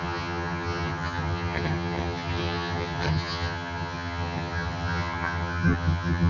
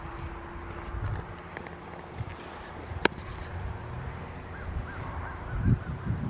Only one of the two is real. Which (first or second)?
second